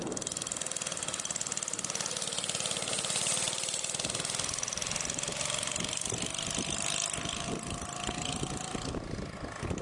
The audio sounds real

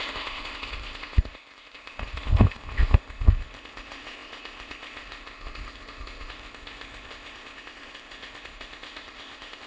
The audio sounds fake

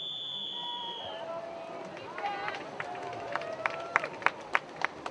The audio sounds fake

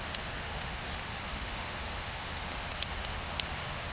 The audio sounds fake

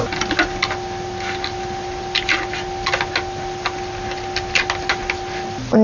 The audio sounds real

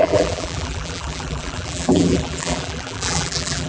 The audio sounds fake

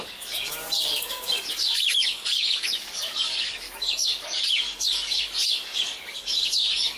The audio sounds fake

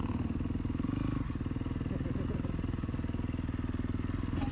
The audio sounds real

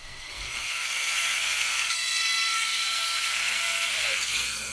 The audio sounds fake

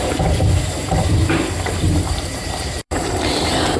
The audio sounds fake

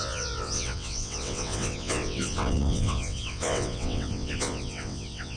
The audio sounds fake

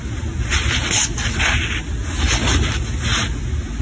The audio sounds real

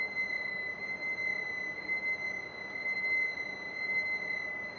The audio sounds real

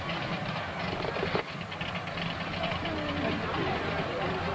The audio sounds real